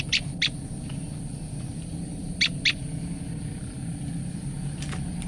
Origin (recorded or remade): recorded